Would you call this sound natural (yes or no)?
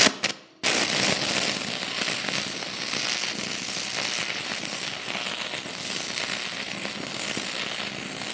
yes